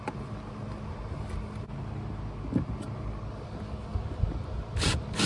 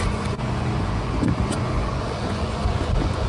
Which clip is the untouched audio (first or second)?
first